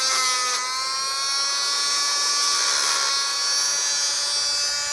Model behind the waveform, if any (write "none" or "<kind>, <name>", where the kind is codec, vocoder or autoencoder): none